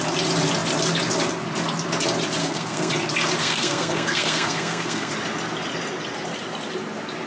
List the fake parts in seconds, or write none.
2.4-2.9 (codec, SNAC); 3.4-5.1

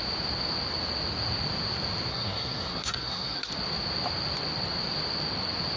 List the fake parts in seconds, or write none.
2.1-3.5 (codec, SNAC)

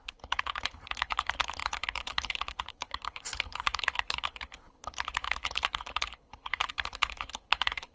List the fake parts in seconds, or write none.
0.0-7.9 (codec, HILCodec)

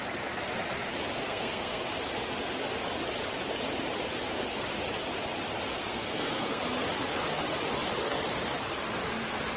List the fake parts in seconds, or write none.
1.2-1.8 (codec, SNAC); 5.8-6.6

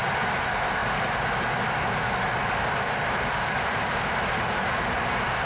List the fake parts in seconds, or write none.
none

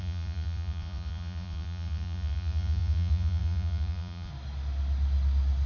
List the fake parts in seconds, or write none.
0.0-4.3 (vocoder, Vocos)